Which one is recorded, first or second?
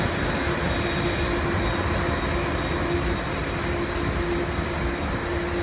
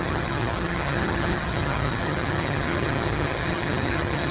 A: first